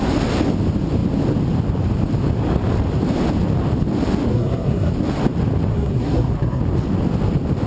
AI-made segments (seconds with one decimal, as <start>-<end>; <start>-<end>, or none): 4.3-4.9; 5.7-6.6